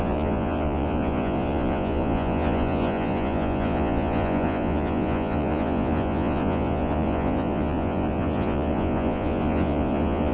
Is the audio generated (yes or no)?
yes